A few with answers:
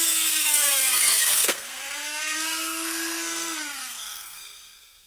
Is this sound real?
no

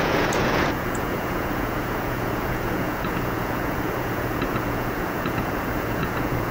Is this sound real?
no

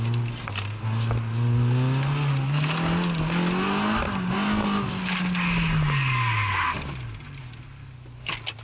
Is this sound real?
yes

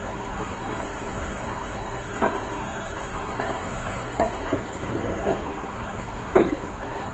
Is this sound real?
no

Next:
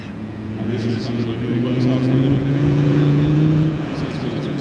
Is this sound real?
no